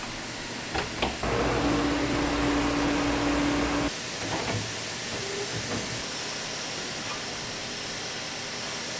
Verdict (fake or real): real